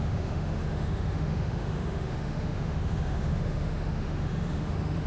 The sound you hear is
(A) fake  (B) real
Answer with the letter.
A